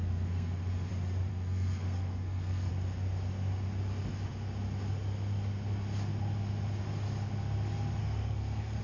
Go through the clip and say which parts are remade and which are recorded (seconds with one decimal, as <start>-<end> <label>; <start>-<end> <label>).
0.0-0.9 remade; 0.9-1.3 recorded; 1.3-2.7 remade; 2.7-8.0 recorded; 8.0-8.8 remade